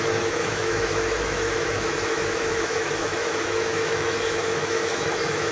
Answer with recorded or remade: remade